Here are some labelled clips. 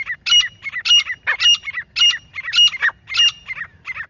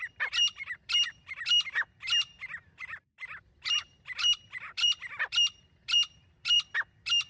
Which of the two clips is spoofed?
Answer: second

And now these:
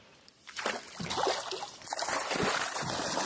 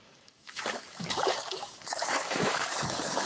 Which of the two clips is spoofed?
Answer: second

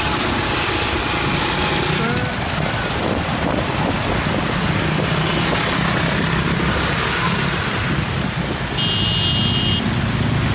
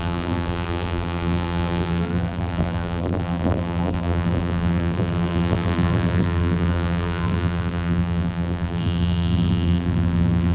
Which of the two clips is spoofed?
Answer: second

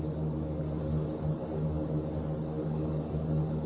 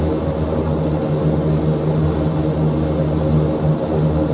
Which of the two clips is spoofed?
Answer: first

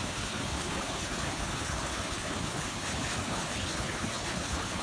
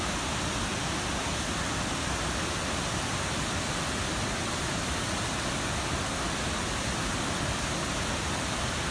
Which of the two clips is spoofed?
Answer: first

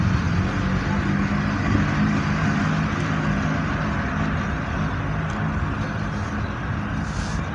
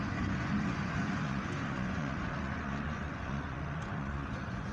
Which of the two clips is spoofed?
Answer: second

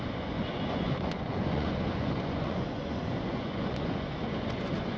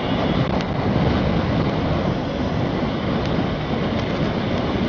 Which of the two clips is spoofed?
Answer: first